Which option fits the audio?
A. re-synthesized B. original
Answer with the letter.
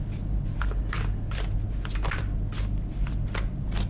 B